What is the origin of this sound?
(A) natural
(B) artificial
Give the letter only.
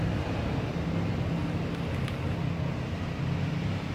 A